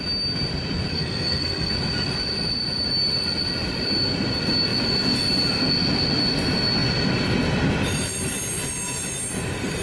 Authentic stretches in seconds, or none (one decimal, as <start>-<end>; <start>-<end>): 0.0-0.9; 1.7-9.8

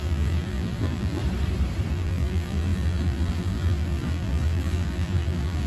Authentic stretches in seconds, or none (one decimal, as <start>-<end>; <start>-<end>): 1.2-1.9

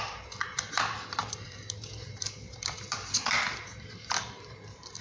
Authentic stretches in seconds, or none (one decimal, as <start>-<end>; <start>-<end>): none